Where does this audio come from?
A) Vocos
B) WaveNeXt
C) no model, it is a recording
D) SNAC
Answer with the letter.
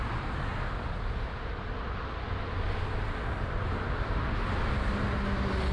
C